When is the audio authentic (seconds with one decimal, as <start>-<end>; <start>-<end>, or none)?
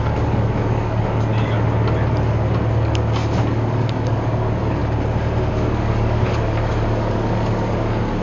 1.3-2.7; 4.8-5.5